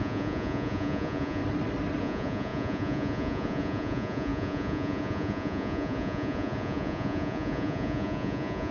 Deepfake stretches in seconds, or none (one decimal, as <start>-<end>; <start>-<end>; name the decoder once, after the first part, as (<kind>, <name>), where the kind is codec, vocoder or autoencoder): 0.0-1.4 (vocoder, Vocos); 2.0-8.7